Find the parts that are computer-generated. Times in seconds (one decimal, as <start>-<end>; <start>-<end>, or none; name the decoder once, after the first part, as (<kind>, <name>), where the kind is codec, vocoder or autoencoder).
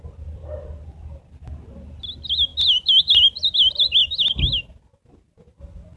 none